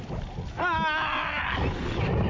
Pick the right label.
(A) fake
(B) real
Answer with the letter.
B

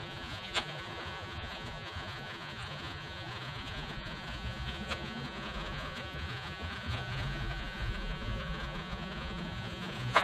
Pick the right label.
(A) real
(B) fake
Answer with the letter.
B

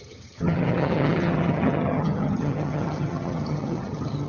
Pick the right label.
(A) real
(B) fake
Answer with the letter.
B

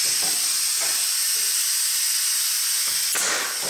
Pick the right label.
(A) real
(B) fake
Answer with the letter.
A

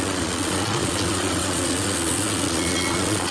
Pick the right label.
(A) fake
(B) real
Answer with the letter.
A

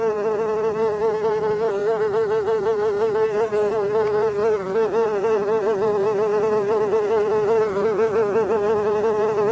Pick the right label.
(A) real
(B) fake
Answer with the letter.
B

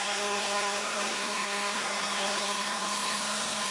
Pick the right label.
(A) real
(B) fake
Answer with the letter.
B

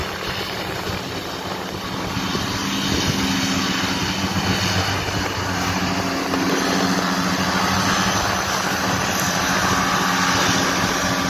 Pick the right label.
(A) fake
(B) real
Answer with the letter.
B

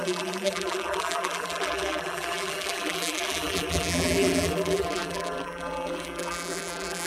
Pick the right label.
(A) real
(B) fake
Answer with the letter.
B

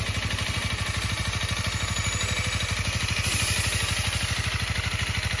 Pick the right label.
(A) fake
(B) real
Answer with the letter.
B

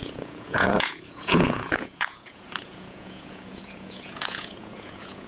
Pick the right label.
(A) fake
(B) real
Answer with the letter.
A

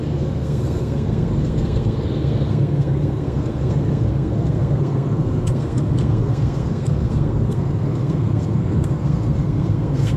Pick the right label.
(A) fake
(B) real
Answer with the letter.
A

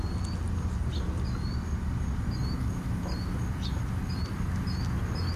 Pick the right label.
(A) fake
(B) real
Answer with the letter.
B